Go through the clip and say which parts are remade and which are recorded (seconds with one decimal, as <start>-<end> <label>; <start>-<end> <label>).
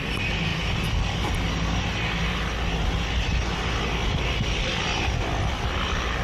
0.0-6.2 recorded